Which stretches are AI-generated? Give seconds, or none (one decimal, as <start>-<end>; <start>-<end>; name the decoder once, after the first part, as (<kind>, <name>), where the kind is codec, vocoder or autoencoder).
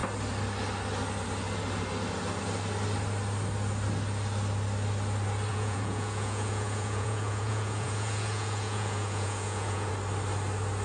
5.5-9.9 (vocoder, Vocos)